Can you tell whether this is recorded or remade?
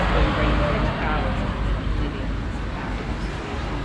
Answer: recorded